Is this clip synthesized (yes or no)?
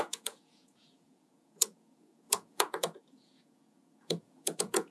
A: yes